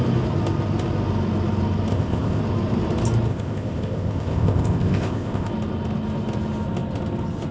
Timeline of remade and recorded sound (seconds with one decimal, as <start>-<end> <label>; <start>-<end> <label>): 0.0-1.9 recorded; 1.9-2.4 remade; 2.4-3.3 recorded; 3.3-5.5 remade; 5.5-7.5 recorded